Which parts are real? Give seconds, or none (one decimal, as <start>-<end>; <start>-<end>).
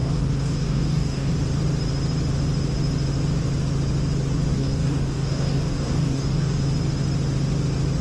1.3-4.5; 6.6-8.0